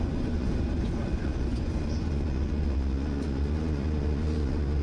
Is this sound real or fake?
fake